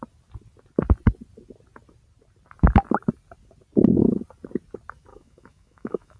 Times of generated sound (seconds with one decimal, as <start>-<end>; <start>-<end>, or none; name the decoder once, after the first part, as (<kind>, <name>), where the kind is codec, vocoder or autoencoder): 5.1-6.2 (autoencoder, DAC-VAE)